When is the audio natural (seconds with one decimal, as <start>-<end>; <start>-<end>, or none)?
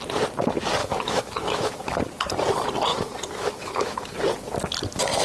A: 0.0-0.8; 2.0-2.9; 4.1-5.2